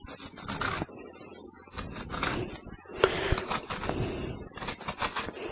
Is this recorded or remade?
recorded